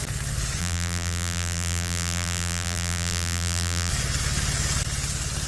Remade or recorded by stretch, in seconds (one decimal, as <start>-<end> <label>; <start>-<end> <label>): 0.0-0.6 recorded; 0.6-3.9 remade; 3.9-5.5 recorded